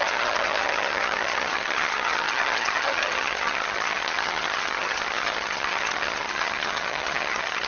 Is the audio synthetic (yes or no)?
yes